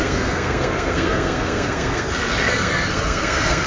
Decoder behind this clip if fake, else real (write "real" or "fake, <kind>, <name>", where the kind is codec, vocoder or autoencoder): fake, codec, SNAC